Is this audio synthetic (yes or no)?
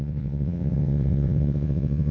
yes